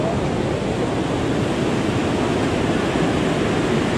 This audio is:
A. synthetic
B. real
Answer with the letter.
B